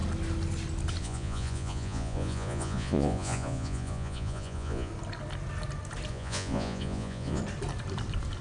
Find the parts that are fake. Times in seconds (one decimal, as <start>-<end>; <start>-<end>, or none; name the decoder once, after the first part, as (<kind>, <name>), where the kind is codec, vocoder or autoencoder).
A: 1.0-4.9 (vocoder, Vocos); 6.1-7.4